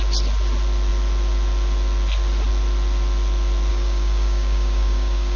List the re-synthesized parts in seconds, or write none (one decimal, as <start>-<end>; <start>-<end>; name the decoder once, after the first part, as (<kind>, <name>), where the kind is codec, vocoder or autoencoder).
3.7-5.4 (codec, DAC)